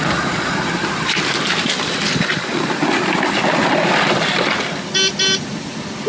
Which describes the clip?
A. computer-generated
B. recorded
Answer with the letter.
B